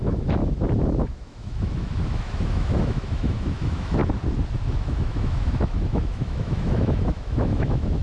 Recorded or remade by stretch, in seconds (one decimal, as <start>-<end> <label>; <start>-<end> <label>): 0.0-0.4 remade; 0.4-1.0 recorded; 1.0-4.0 remade; 4.0-4.8 recorded; 4.8-8.0 remade